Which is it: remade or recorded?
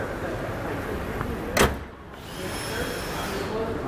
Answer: recorded